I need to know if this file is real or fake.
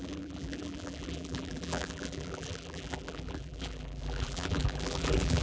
fake